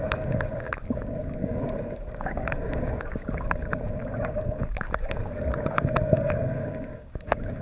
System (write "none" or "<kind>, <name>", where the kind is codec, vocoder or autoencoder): codec, DAC